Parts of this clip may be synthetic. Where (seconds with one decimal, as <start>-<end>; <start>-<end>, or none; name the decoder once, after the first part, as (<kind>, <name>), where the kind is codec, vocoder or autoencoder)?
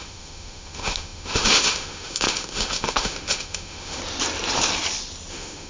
0.0-4.0 (autoencoder, DAC-VAE); 5.3-5.7